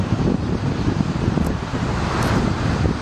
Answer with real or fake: fake